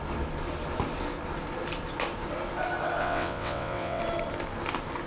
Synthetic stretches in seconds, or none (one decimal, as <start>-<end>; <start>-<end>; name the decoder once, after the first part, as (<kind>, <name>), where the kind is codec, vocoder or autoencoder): 3.0-4.0 (vocoder, WaveNeXt)